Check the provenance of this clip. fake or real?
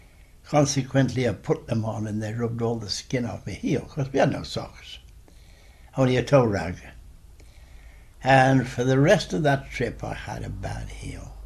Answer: real